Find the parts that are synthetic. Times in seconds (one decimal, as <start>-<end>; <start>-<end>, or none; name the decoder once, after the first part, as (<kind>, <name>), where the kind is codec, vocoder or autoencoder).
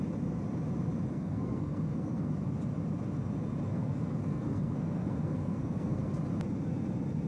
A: 1.1-2.3 (codec, SNAC); 3.7-6.1